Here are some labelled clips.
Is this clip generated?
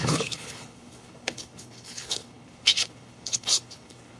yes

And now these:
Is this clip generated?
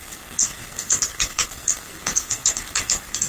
yes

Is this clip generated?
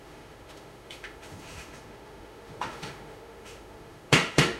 yes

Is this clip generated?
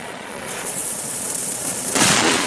yes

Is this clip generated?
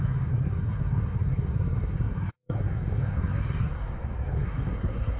yes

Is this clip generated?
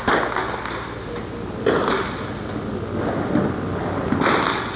no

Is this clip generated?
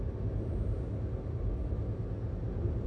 no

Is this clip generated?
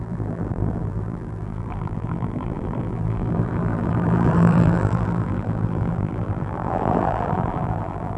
yes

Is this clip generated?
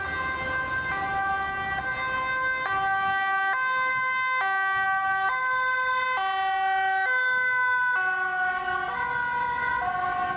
no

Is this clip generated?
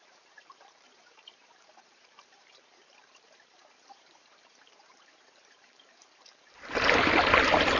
yes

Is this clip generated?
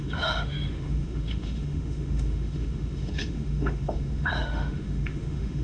yes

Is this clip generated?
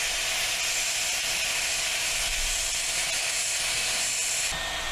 no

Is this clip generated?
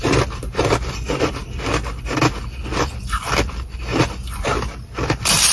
no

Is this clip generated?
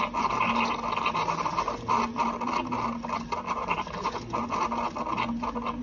no